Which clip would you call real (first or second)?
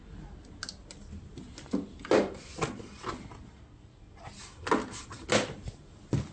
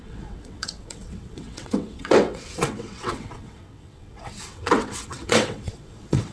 first